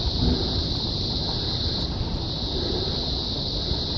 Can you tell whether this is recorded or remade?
recorded